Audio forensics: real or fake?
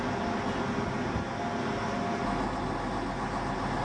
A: real